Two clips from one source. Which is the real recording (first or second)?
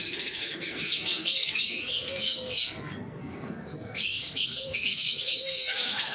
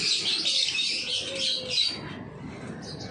second